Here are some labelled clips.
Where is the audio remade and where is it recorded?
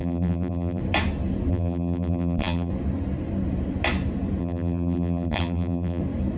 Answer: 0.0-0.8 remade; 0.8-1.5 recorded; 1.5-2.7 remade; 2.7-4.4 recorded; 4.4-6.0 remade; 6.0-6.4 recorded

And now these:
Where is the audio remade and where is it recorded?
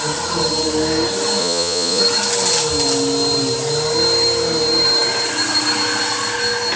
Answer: 0.0-1.4 recorded; 1.4-2.0 remade; 2.0-6.8 recorded